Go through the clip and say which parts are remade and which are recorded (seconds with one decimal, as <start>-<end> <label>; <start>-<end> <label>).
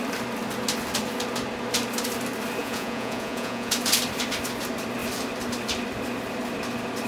0.0-2.6 recorded; 2.6-3.7 remade; 3.7-7.1 recorded